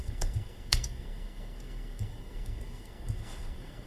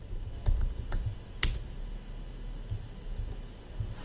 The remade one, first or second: first